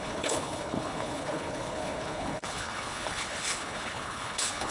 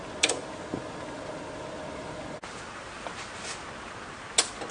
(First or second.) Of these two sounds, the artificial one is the first